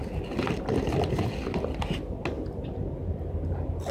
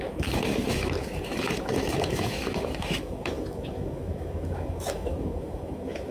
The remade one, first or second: second